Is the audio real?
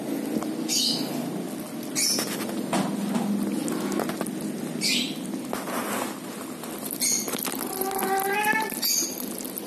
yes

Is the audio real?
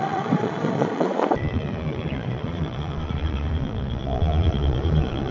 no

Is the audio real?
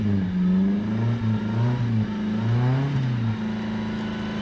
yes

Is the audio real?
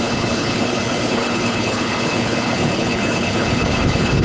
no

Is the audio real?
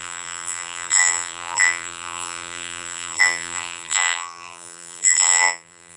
no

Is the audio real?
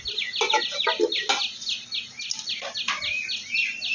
yes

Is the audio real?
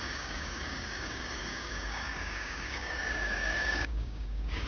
no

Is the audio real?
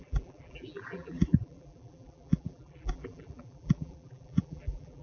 no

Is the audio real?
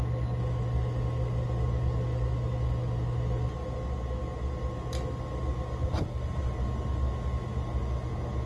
yes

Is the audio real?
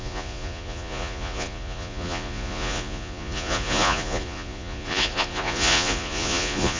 no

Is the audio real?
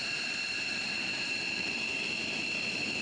no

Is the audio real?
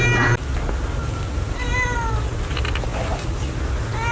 yes